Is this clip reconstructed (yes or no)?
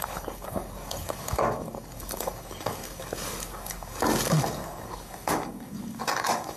yes